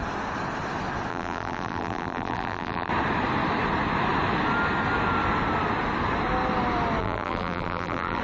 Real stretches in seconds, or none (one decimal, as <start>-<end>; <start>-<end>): 0.0-1.1; 2.9-7.0